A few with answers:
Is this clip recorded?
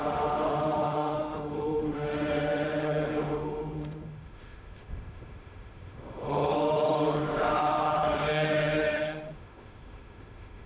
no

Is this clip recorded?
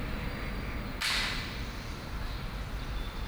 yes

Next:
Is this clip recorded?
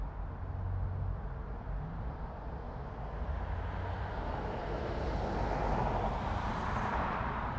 yes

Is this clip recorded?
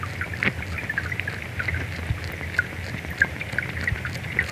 yes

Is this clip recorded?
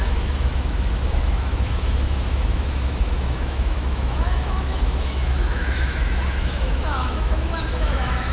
no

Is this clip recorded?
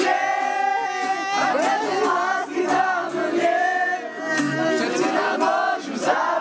yes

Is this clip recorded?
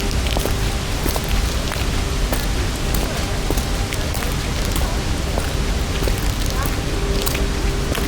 yes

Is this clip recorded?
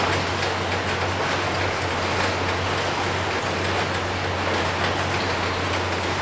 yes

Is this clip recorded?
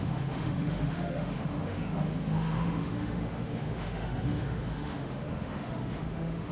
no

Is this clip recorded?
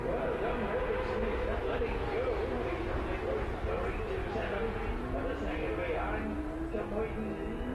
yes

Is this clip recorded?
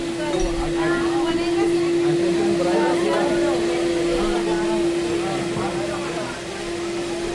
yes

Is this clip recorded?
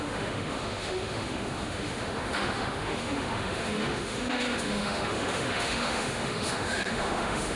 no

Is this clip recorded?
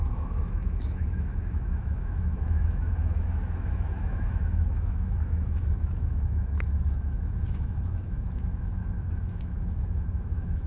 no